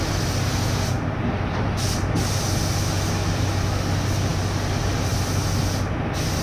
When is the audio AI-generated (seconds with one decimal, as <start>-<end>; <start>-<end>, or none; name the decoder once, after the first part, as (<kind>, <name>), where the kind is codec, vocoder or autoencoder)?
none